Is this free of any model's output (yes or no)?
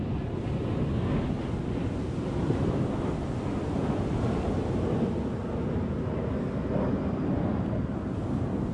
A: yes